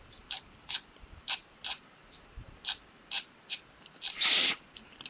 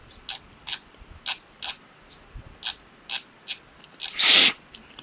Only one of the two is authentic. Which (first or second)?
second